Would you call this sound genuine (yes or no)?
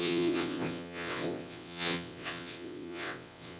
no